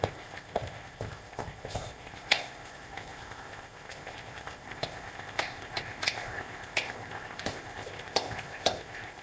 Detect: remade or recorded remade